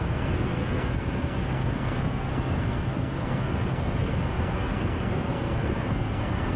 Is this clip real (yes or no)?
no